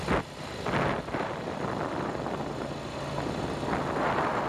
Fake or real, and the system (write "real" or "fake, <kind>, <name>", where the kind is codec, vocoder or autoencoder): real